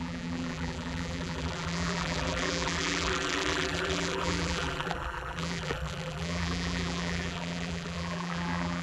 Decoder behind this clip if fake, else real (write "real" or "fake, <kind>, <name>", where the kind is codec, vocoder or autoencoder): fake, vocoder, BigVGAN v2